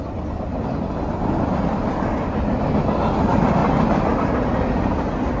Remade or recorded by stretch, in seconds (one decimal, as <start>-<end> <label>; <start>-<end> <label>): 0.0-5.4 recorded